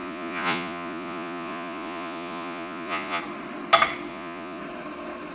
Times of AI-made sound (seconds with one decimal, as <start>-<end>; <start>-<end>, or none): 0.0-3.2; 4.1-4.6